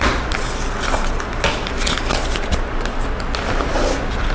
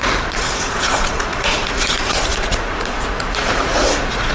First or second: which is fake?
second